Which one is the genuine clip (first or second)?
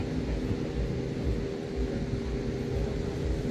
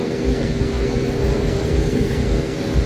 first